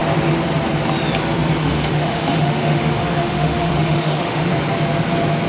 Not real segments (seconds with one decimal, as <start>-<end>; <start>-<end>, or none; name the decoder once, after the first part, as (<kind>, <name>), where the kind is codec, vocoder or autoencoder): 1.6-4.5 (autoencoder, DAC-VAE)